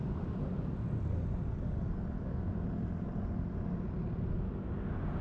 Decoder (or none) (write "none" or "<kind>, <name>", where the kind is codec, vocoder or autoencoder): none